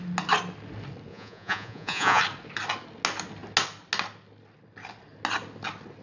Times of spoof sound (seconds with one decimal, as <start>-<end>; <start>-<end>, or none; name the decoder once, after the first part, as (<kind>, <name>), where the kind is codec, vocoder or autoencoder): 1.1-2.2 (vocoder, Vocos)